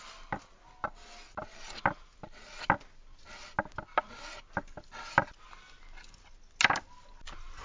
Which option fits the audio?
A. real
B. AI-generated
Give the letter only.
A